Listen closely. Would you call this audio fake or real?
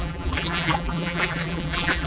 fake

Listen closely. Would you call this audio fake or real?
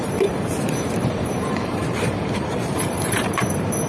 fake